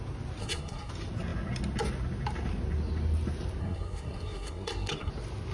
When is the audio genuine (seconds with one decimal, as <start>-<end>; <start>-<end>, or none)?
0.0-0.4; 0.9-3.6; 5.1-5.5